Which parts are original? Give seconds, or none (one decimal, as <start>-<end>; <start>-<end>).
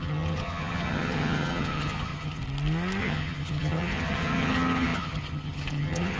2.4-3.0